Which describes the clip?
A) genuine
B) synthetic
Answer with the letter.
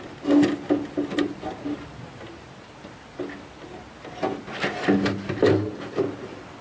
A